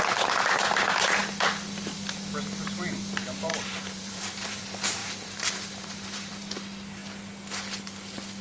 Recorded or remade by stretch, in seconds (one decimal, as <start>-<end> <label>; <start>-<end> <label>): 0.0-3.5 recorded; 3.5-4.6 remade; 4.6-5.0 recorded; 5.0-6.3 remade; 6.3-8.4 recorded